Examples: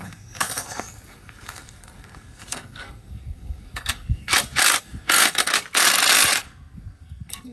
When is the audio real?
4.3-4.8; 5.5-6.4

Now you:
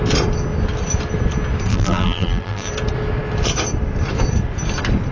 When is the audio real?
0.0-1.7; 2.7-5.1

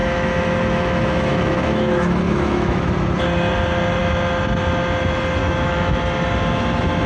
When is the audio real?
2.9-5.4; 6.0-7.1

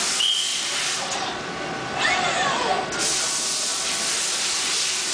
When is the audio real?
0.0-0.5; 2.0-3.7

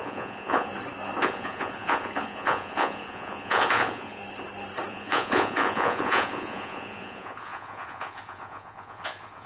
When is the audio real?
0.7-1.2; 4.2-4.9

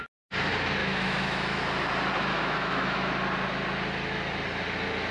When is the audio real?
0.0-0.8; 1.6-2.3; 3.1-5.1

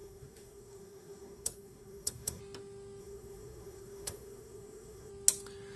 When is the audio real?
2.4-3.0; 5.1-5.8